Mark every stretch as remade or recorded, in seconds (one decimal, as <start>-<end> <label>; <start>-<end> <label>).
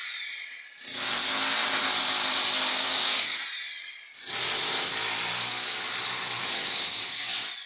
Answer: 0.0-2.7 recorded; 2.7-3.4 remade; 3.4-6.4 recorded; 6.4-7.3 remade; 7.3-7.7 recorded